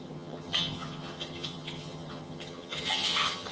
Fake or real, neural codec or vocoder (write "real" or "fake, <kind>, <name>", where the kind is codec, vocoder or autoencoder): fake, vocoder, HiFi-GAN